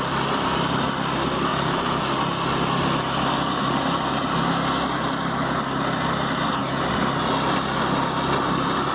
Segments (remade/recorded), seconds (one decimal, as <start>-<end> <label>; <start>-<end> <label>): 0.0-1.5 recorded; 1.5-2.0 remade; 2.0-8.9 recorded